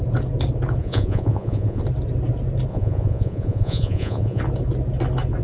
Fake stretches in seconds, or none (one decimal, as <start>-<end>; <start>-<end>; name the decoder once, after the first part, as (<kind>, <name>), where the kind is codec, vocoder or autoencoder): 0.8-1.8 (vocoder, Vocos); 2.7-4.4